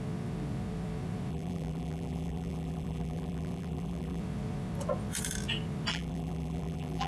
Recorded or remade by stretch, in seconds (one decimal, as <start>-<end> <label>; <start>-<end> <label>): 0.0-1.3 recorded; 1.3-4.2 remade; 4.2-5.9 recorded; 5.9-7.1 remade